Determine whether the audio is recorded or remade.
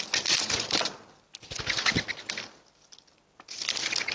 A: recorded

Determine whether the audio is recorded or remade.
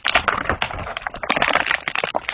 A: recorded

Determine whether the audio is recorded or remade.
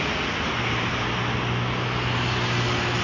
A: recorded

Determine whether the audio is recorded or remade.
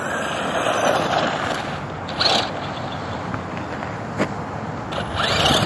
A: recorded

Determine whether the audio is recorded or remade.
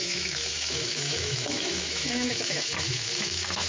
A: remade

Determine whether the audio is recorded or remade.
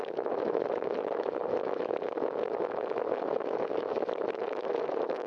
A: remade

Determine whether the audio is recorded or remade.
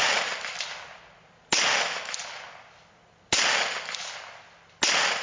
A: recorded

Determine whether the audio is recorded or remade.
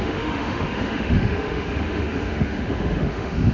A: remade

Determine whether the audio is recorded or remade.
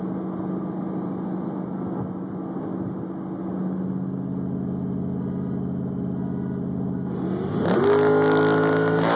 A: recorded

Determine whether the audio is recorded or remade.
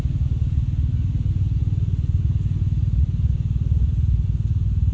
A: recorded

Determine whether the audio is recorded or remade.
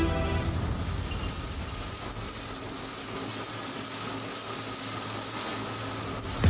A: recorded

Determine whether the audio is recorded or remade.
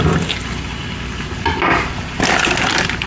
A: recorded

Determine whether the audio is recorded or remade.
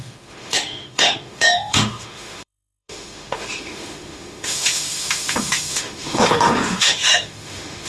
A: remade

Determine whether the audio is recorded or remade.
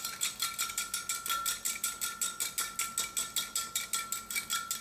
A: recorded